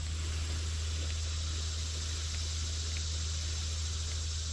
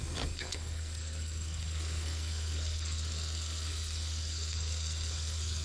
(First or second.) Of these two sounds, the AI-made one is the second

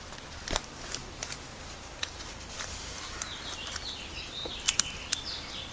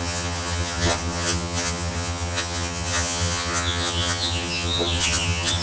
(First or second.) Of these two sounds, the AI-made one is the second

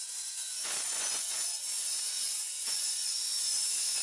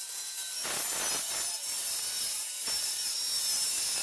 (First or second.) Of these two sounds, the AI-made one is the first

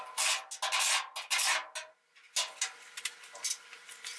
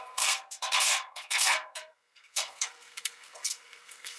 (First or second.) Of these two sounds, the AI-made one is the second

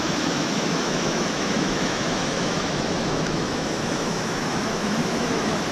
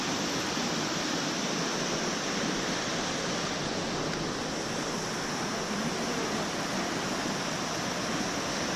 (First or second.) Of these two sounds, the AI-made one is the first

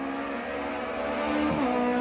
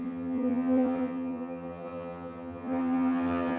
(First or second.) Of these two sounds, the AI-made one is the second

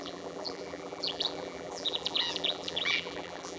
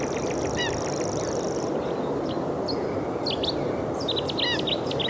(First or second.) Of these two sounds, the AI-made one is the first